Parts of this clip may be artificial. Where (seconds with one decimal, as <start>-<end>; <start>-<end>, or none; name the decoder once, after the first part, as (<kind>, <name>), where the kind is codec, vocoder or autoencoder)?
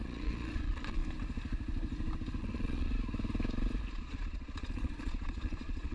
0.0-1.0 (vocoder, Vocos); 2.4-2.9; 3.9-5.9